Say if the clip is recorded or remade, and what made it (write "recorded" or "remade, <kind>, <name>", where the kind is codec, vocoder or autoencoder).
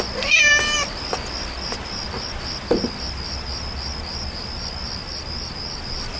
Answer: remade, vocoder, BigVGAN v2